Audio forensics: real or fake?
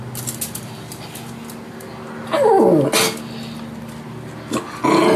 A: real